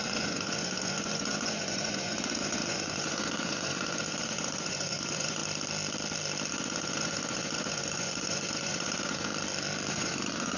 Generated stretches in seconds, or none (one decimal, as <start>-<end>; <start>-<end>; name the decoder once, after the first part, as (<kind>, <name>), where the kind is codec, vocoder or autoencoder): 0.0-5.4 (vocoder, Vocos); 6.5-9.3; 9.9-10.6